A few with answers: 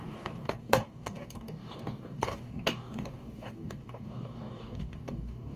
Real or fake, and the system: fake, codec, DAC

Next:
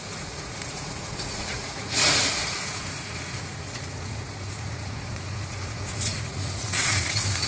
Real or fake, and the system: fake, vocoder, Vocos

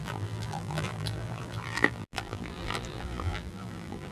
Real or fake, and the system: fake, vocoder, BigVGAN v2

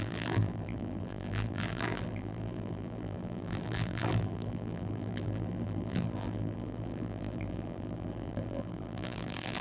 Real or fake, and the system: fake, vocoder, BigVGAN v2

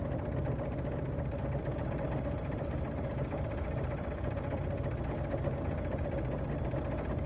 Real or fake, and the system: fake, vocoder, BigVGAN v2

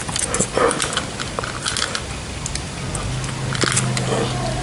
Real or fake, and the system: real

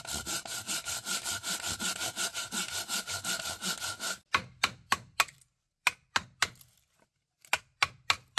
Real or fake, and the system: real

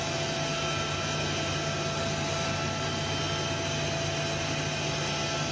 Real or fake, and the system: real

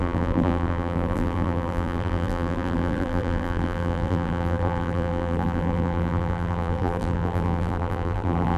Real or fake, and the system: fake, vocoder, BigVGAN v2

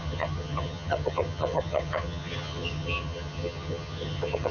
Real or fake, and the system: fake, vocoder, HiFi-GAN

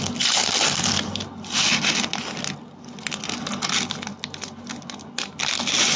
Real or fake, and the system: real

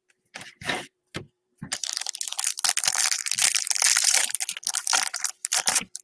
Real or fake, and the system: fake, vocoder, BigVGAN v2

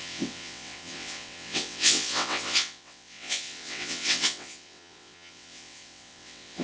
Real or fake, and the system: fake, vocoder, WaveNeXt